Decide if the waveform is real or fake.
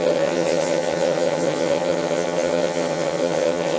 fake